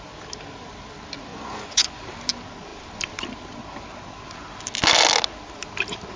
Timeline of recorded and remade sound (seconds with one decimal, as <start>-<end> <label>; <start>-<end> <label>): 0.0-1.3 recorded; 1.3-2.0 remade; 2.0-6.2 recorded